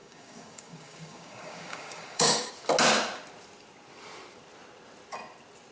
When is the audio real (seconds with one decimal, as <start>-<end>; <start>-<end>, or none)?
2.5-5.7